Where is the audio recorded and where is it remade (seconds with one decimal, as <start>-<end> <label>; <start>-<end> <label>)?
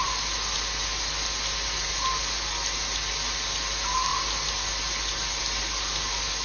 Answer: 0.0-6.4 recorded